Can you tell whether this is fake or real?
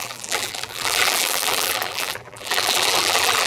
fake